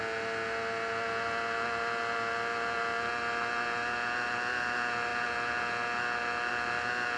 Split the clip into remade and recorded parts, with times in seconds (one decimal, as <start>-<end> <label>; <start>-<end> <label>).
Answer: 0.0-7.2 recorded